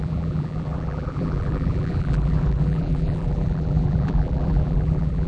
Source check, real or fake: fake